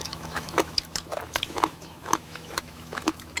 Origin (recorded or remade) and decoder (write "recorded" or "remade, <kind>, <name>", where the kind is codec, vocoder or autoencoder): remade, autoencoder, DAC-VAE